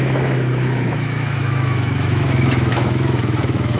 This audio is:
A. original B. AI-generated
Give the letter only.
B